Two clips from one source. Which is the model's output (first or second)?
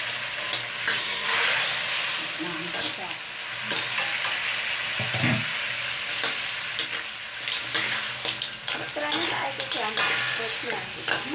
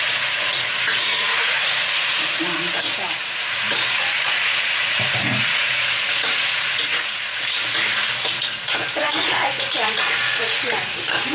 second